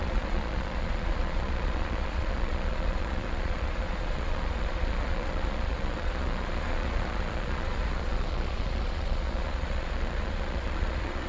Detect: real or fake fake